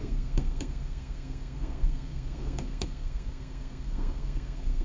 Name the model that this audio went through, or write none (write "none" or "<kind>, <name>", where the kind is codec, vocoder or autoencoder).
codec, SNAC